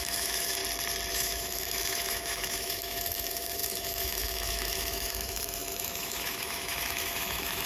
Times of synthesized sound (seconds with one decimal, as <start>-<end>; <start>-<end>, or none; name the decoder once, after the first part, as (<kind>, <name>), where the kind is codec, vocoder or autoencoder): 0.0-0.6 (autoencoder, DAC-VAE); 1.1-7.7